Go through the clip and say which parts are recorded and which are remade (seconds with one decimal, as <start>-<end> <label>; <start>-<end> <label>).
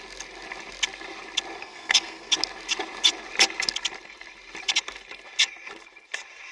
0.0-1.6 recorded; 1.6-2.3 remade; 2.3-6.5 recorded